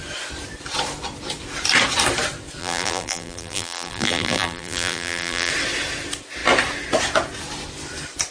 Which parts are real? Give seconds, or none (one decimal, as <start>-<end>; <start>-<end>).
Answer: 0.0-2.6; 5.5-8.3